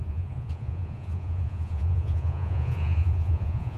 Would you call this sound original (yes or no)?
no